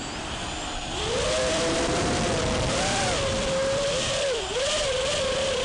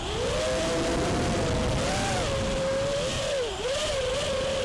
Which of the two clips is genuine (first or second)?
second